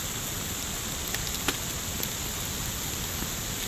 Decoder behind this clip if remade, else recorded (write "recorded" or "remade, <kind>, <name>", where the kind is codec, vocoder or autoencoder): recorded